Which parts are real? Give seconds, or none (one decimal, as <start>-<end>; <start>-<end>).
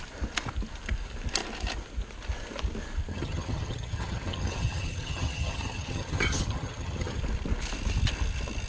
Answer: 0.0-3.1; 7.2-8.7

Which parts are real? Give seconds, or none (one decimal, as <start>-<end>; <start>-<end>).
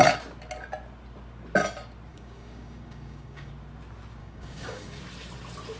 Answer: 0.0-2.1; 3.5-4.2; 5.0-5.8